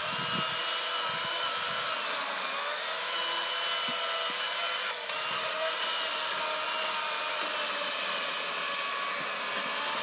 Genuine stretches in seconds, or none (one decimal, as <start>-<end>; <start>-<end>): 0.0-10.0